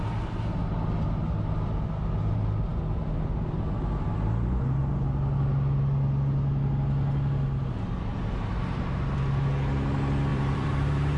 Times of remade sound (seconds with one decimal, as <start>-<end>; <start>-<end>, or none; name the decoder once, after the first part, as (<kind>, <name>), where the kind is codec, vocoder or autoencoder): 10.3-11.2 (vocoder, BigVGAN v2)